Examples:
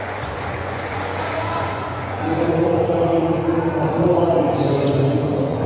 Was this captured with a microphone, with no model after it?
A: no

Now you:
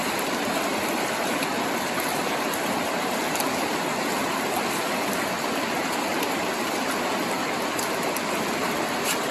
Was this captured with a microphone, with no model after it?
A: no